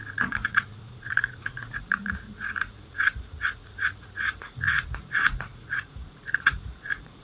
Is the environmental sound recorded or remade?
remade